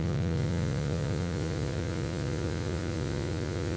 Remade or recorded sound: remade